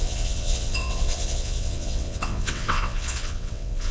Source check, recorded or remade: remade